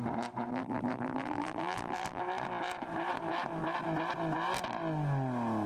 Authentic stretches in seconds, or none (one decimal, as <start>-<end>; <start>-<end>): 0.0-0.5; 2.2-5.7

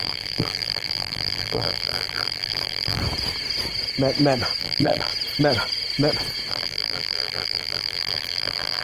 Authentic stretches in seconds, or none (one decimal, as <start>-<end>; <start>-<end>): 3.0-4.6; 5.1-6.5